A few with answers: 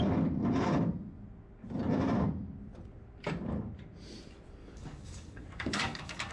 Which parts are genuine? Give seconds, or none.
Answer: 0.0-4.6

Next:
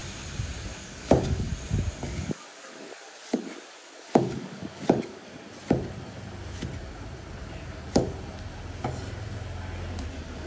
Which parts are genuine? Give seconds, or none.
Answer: 0.0-0.8; 1.5-2.0; 5.3-10.1

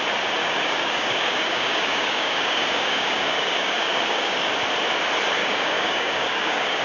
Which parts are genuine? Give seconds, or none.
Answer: 0.0-0.4; 4.5-5.4